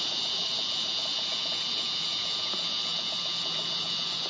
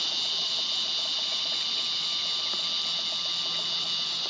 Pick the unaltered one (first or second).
second